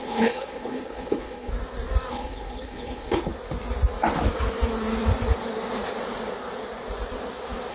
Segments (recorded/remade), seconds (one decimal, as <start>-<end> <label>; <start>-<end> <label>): 0.0-1.5 remade; 1.5-2.1 recorded; 2.1-3.3 remade; 3.3-7.7 recorded